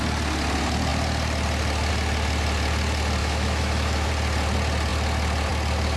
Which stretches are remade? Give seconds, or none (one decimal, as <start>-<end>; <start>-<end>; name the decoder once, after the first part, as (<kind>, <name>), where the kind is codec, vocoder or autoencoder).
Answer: 3.2-4.1 (autoencoder, DAC-VAE)